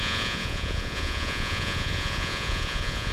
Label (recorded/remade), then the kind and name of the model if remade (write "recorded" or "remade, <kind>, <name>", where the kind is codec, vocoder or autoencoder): remade, vocoder, Vocos